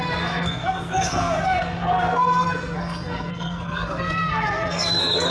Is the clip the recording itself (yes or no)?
no